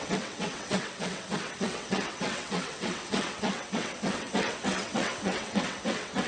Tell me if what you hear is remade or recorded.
remade